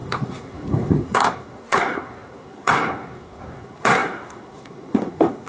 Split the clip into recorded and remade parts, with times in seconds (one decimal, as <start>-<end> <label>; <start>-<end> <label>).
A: 0.0-5.5 remade